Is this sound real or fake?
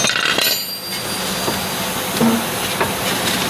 real